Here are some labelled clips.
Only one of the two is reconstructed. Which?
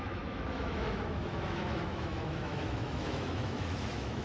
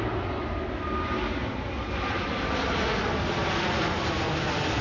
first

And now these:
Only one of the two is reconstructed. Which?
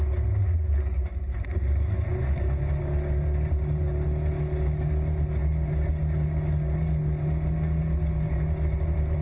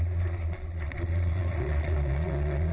second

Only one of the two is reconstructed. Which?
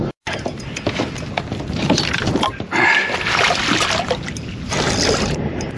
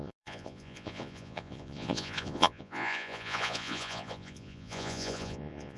second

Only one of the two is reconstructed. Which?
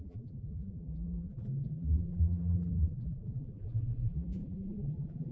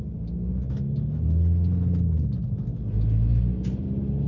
first